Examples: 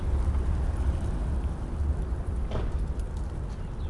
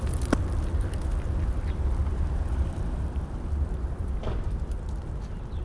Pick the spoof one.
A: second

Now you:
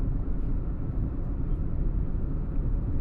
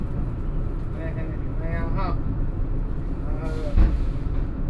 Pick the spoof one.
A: first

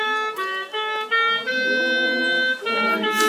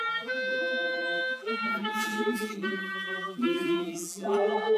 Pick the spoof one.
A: second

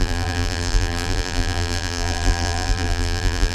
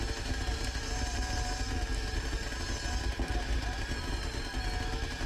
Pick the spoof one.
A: first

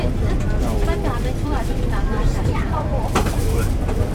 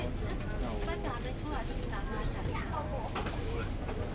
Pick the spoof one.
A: first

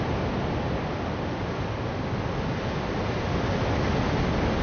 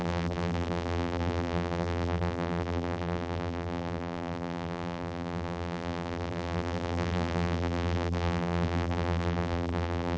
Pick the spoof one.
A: second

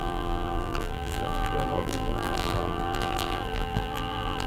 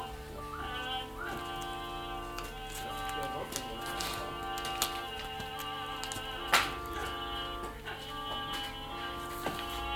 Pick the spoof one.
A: first